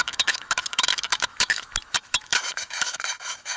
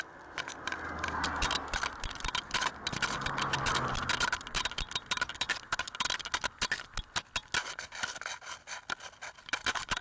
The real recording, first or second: second